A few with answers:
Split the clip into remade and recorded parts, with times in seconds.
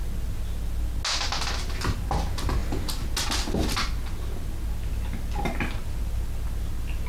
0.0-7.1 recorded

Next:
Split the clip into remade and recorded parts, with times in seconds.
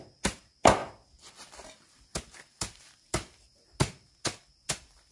0.0-5.1 recorded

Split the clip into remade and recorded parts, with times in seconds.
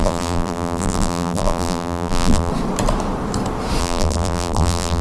0.0-2.5 remade; 2.5-3.8 recorded; 3.8-5.0 remade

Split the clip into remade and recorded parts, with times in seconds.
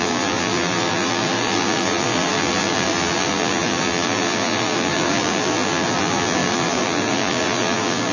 0.0-8.1 remade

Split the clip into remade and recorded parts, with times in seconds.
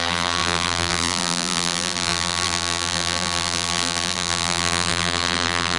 0.0-5.8 remade